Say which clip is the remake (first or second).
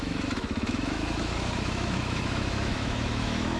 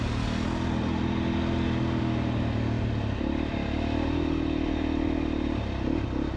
first